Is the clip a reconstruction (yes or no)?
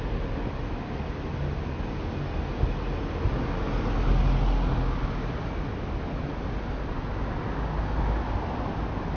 no